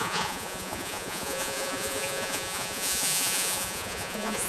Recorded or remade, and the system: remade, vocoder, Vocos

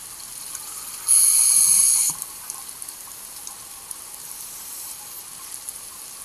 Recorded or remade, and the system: recorded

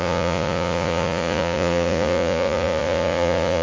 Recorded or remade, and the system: remade, vocoder, Vocos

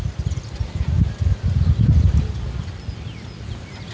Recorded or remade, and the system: recorded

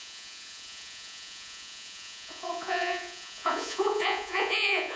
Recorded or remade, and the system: remade, vocoder, Vocos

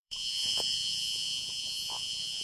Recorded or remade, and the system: remade, vocoder, Vocos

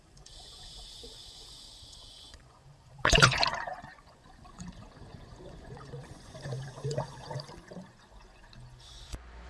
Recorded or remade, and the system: remade, vocoder, Vocos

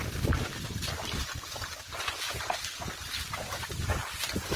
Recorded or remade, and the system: recorded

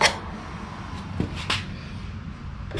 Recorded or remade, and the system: recorded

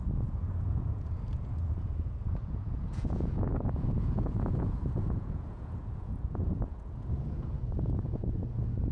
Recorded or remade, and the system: remade, vocoder, Vocos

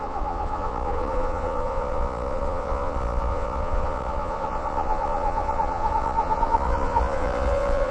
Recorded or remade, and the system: remade, vocoder, Vocos